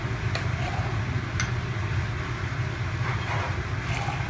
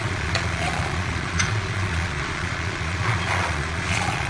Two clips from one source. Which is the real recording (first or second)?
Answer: first